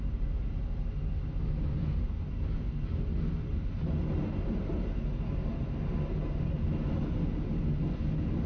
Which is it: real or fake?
real